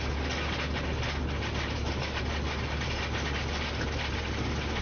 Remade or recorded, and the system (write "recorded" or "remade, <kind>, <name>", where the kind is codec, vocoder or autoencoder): recorded